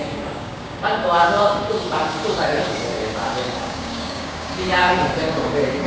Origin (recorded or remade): remade